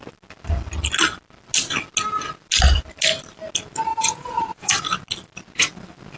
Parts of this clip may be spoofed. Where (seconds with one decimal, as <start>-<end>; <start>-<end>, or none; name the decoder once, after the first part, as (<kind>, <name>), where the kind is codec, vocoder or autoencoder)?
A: 3.9-4.8 (vocoder, Vocos)